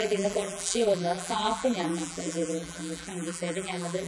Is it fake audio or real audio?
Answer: fake